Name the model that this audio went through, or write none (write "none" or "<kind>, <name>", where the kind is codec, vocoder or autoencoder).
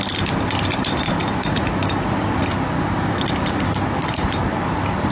none